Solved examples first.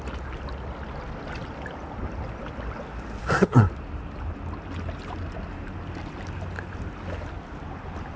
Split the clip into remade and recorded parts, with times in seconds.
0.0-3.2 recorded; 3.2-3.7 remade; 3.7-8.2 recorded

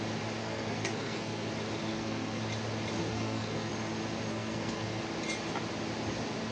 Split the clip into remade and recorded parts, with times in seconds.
0.0-0.4 recorded; 0.4-1.5 remade; 1.5-1.9 recorded; 1.9-2.4 remade; 2.4-3.0 recorded; 3.0-3.7 remade; 3.7-4.3 recorded; 4.3-5.0 remade; 5.0-6.5 recorded

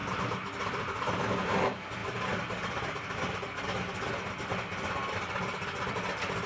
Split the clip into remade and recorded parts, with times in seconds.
0.0-6.5 recorded

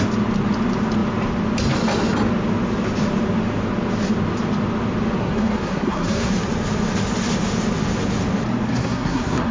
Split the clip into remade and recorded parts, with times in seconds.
0.0-5.2 recorded; 5.2-6.3 remade; 6.3-8.7 recorded; 8.7-9.5 remade

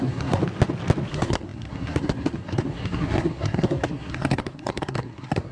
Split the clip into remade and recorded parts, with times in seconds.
0.0-0.4 remade; 0.4-1.1 recorded; 1.1-5.5 remade

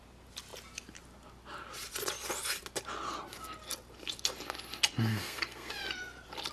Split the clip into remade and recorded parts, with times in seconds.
0.0-5.1 recorded; 5.1-5.7 remade; 5.7-6.5 recorded

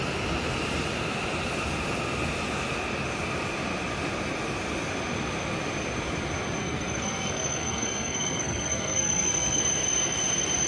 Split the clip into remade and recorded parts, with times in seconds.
0.0-6.6 recorded; 6.6-9.6 remade; 9.6-10.7 recorded

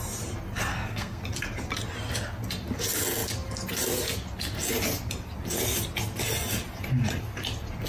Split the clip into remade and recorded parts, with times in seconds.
0.0-0.7 recorded; 0.7-1.2 remade; 1.2-7.9 recorded